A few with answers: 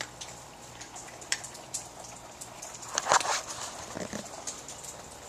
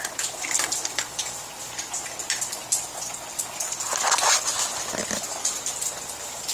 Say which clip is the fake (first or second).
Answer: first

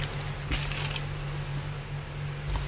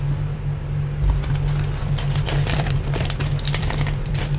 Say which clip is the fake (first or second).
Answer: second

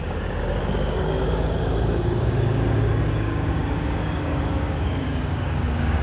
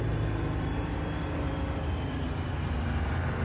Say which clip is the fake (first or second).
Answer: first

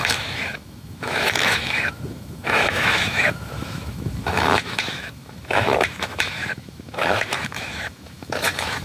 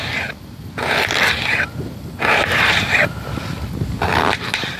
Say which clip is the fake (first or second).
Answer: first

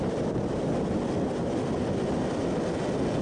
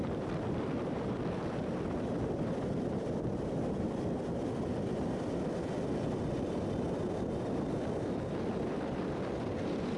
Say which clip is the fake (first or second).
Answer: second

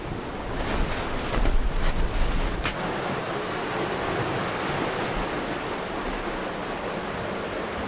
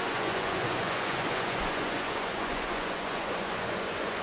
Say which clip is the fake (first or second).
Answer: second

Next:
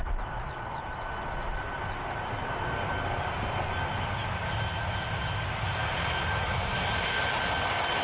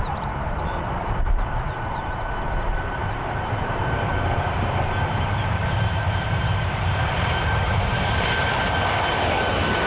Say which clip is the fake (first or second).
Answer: second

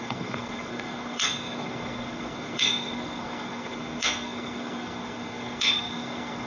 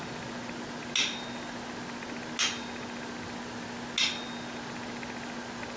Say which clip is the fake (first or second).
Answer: first